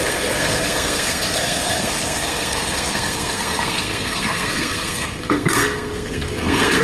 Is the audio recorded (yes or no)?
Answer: no